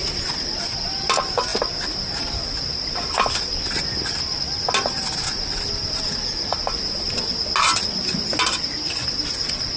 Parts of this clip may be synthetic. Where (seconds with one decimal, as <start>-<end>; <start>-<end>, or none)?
none